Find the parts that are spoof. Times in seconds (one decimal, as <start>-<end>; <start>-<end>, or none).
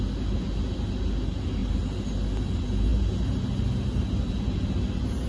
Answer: none